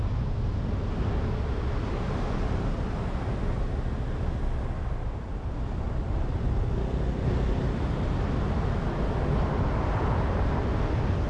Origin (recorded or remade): recorded